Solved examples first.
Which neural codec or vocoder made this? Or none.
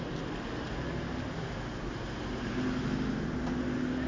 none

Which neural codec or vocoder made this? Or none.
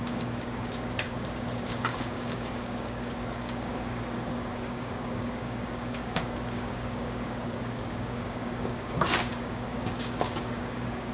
codec, DAC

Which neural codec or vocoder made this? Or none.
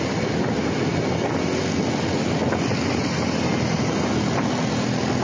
none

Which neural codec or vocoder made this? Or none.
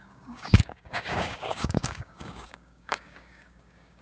codec, DAC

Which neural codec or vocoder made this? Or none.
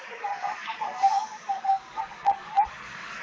codec, DAC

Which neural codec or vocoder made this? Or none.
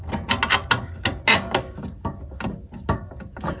none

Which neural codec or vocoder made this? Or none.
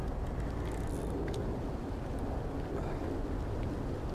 none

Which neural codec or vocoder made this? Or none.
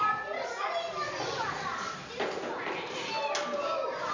none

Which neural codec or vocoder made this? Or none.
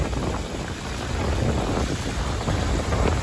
none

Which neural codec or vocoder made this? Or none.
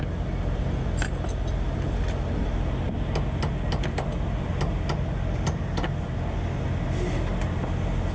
none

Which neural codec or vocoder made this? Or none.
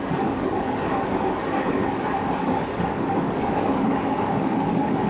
codec, DAC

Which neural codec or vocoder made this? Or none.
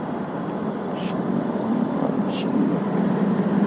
none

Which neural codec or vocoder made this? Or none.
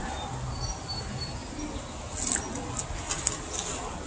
none